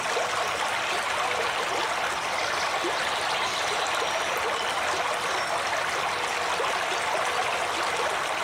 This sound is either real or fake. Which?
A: real